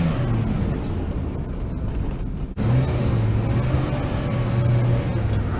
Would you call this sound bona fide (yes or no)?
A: yes